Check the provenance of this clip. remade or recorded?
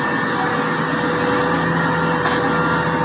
recorded